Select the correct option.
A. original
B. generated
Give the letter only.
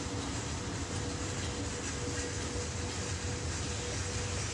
A